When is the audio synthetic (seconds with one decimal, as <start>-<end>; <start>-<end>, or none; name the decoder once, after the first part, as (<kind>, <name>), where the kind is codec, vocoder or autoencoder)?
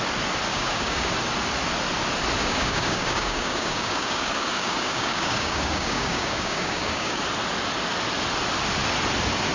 0.5-1.1 (codec, DAC); 2.4-7.2